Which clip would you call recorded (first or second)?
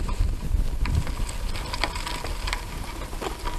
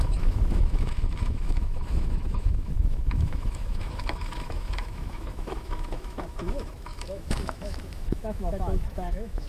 first